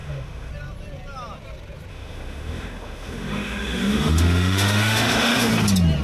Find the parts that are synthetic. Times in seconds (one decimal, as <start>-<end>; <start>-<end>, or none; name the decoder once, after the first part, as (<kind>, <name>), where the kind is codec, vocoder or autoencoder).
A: 0.0-0.5 (autoencoder, DAC-VAE); 1.9-5.5